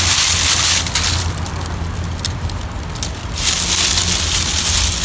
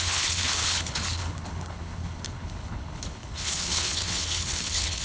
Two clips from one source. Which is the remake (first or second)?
second